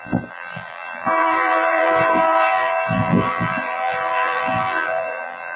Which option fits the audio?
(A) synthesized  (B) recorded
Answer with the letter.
A